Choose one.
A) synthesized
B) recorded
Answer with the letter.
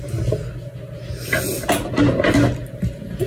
B